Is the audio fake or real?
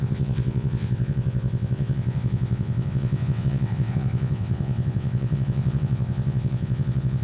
fake